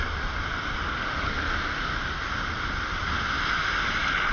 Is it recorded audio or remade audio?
recorded